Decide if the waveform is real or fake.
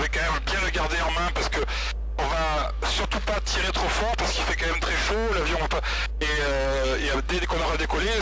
real